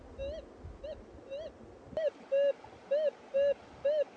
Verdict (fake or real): real